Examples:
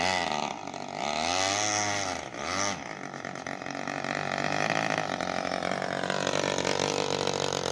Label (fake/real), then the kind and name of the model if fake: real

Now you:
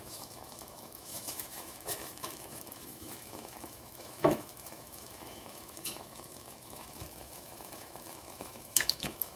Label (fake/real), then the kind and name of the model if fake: fake, autoencoder, DAC-VAE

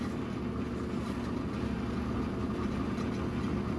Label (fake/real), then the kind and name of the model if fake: real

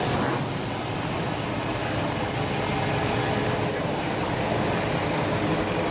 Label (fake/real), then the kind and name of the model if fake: real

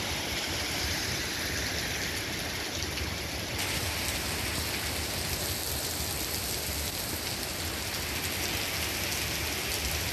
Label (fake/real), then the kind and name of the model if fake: real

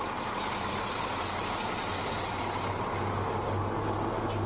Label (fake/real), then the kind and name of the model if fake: real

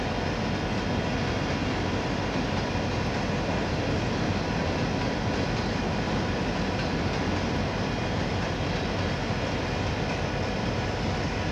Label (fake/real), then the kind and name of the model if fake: real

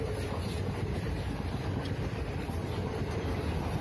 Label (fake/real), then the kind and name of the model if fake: real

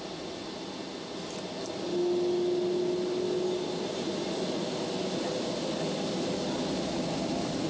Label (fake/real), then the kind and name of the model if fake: real